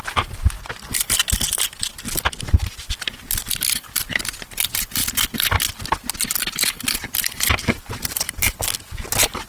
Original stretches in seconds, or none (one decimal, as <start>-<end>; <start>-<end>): 0.0-9.5

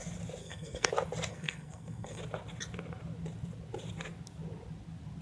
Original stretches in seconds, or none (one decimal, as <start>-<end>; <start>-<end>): 0.0-0.4; 0.9-1.3; 2.2-5.2

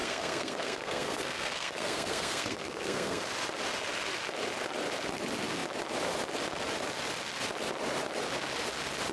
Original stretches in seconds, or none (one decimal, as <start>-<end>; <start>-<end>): 3.2-9.1

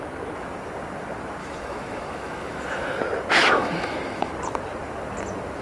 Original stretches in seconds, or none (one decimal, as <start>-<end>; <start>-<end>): 0.0-1.4; 3.0-3.4; 4.3-5.6

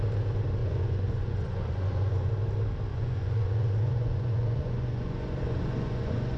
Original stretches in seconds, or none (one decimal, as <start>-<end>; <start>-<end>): 0.0-0.6; 2.3-2.9

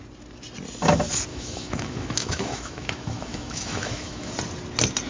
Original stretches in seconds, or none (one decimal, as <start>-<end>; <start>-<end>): 0.0-1.3; 4.3-5.1

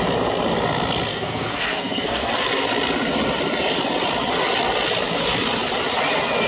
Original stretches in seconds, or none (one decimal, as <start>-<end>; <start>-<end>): 0.0-1.1; 2.3-6.5

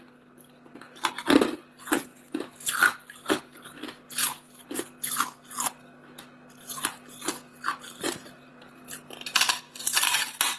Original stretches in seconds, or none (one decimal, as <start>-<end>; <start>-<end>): 0.0-7.5; 8.8-10.6